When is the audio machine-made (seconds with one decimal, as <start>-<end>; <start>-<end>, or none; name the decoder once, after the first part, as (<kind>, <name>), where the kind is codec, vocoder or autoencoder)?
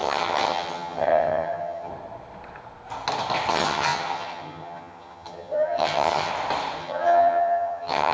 0.0-1.9 (vocoder, HiFi-GAN); 3.5-6.3; 6.8-8.1